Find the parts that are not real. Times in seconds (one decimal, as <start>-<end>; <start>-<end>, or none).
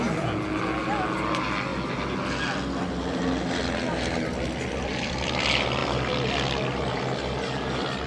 none